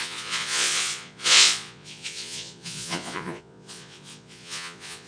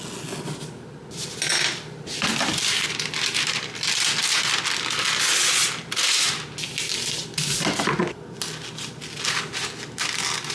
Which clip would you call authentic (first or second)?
second